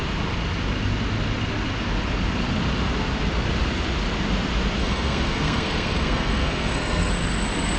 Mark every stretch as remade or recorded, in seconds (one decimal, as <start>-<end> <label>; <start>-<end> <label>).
0.0-4.8 recorded; 4.8-7.1 remade; 7.1-7.8 recorded